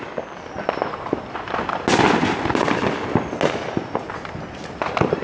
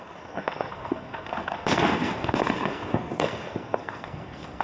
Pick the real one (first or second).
first